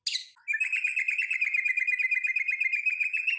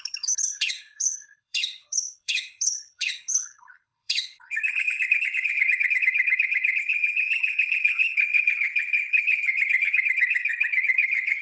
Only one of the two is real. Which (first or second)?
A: first